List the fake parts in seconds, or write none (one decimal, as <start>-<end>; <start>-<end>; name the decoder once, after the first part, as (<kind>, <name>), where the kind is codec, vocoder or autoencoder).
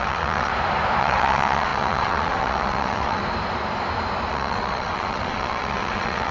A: 0.0-0.5 (vocoder, WaveNeXt); 1.0-3.2; 4.3-6.3